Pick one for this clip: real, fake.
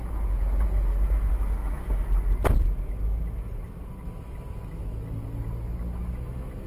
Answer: real